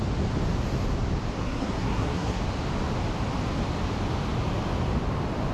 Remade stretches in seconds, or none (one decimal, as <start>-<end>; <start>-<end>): 1.4-2.4